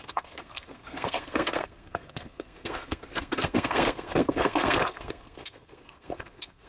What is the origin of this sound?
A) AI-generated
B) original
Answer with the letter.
A